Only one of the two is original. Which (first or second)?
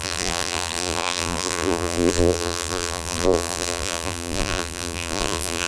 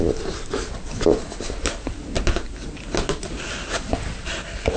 second